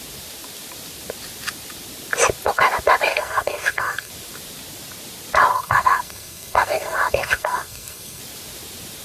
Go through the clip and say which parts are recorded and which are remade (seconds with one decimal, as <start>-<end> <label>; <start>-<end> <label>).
0.0-3.1 recorded; 3.1-4.1 remade; 4.1-5.5 recorded; 5.5-8.2 remade; 8.2-9.0 recorded